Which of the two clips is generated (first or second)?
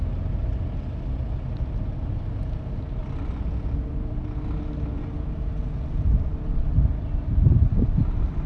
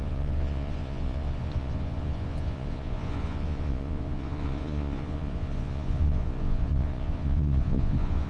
second